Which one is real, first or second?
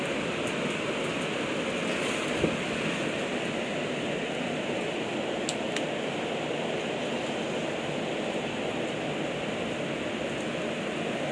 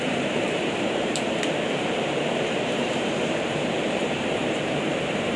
first